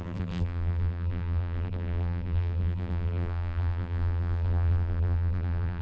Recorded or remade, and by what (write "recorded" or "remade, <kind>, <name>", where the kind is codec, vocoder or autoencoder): remade, vocoder, BigVGAN v2